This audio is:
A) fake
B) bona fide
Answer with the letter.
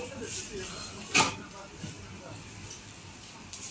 B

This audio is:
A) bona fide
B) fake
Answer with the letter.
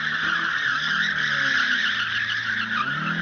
A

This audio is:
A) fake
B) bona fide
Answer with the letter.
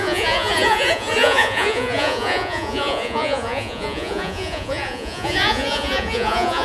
A